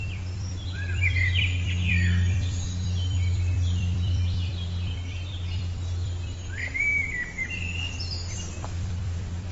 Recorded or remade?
remade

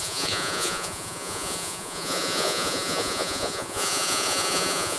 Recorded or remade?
remade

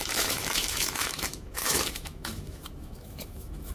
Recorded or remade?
remade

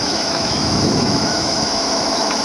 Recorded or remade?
remade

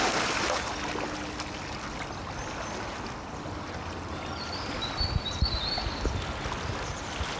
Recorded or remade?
recorded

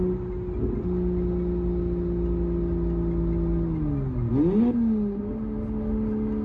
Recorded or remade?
recorded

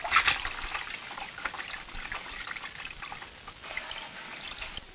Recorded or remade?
recorded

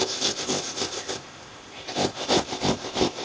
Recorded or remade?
remade